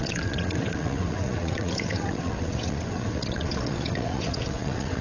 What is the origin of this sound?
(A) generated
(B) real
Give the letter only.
A